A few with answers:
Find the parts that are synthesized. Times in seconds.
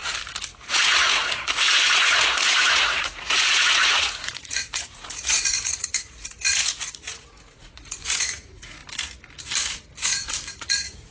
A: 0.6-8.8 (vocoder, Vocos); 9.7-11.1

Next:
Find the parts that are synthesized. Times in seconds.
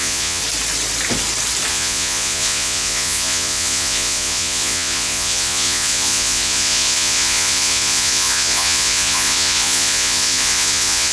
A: 0.0-0.4 (vocoder, Vocos); 1.7-11.1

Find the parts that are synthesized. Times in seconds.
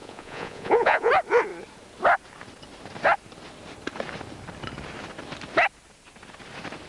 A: 0.0-1.1 (vocoder, Vocos)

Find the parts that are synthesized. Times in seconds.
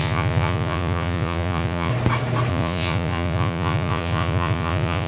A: 0.0-1.9 (vocoder, Vocos); 2.5-5.1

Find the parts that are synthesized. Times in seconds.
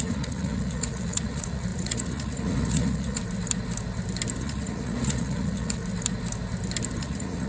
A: 0.0-3.2 (vocoder, Vocos); 4.4-5.8; 7.0-7.5